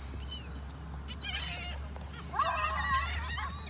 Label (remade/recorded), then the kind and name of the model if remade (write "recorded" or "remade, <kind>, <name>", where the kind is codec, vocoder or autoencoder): recorded